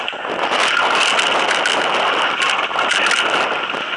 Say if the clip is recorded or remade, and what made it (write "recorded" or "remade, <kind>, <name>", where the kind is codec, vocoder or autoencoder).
recorded